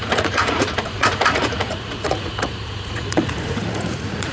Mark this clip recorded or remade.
remade